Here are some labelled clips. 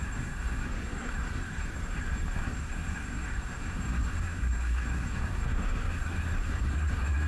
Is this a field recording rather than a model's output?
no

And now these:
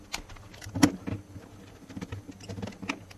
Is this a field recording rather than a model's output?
yes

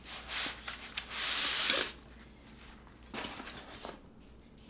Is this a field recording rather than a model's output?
yes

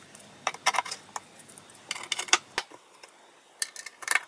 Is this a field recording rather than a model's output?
yes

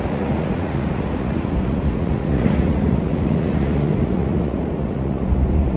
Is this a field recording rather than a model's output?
no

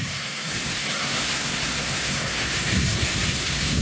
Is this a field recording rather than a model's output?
no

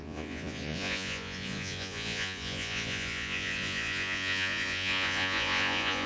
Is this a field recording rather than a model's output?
no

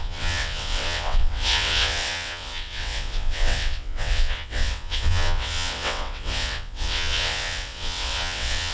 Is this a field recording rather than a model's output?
no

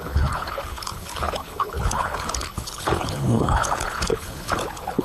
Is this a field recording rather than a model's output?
no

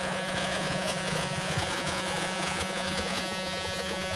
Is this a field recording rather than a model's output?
no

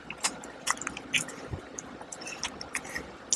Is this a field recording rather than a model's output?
yes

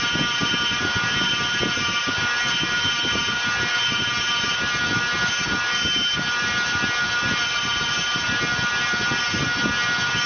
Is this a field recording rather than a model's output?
yes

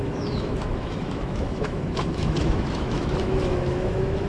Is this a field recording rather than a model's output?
no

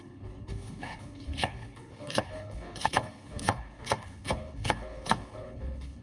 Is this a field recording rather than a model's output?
no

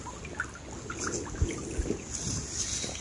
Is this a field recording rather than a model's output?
yes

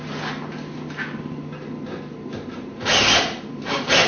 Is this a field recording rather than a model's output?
yes